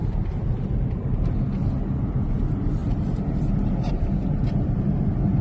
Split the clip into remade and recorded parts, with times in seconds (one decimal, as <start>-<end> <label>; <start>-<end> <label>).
0.0-5.4 recorded